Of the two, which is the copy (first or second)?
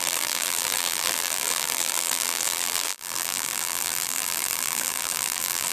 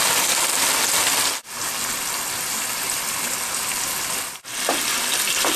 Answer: first